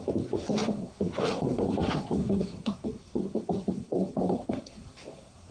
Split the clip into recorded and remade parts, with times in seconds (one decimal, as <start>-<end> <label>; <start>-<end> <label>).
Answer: 0.0-5.5 remade